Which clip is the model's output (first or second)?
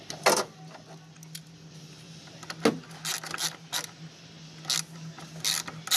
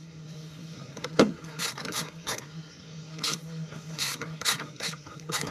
second